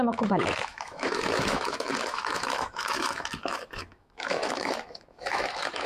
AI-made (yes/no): yes